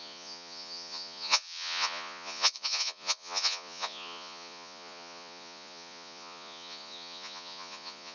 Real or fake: fake